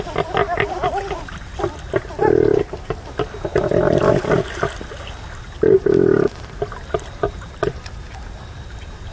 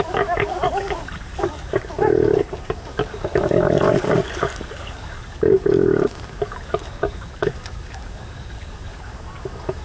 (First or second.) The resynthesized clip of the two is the second